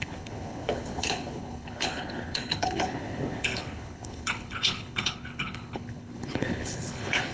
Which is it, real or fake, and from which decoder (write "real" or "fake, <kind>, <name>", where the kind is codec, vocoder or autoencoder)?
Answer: fake, codec, HILCodec